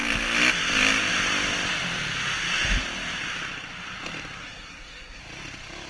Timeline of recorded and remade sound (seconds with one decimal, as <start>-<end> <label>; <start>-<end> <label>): 0.0-4.4 recorded; 4.4-5.2 remade; 5.2-5.9 recorded